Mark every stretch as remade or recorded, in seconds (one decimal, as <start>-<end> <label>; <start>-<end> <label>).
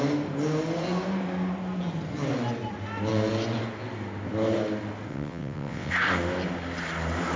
0.0-5.1 recorded; 5.1-5.9 remade; 5.9-7.4 recorded